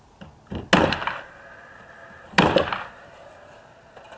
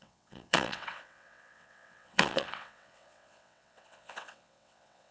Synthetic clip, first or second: second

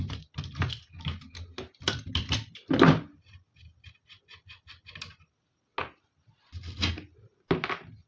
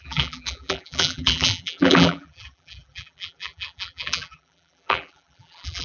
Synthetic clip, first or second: second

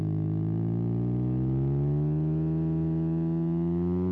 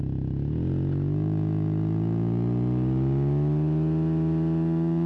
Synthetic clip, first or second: first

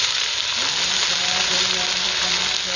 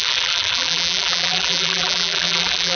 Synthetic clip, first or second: second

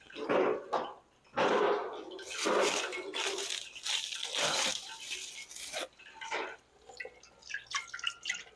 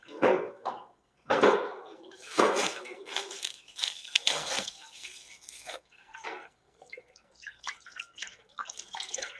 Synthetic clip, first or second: second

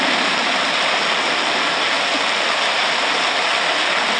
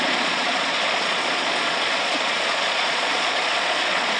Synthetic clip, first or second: second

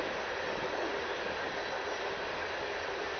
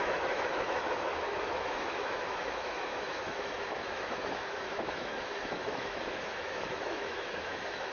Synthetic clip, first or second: second